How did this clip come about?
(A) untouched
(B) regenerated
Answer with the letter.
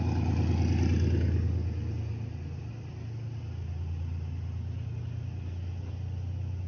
A